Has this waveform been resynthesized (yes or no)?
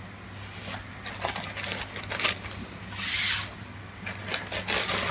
no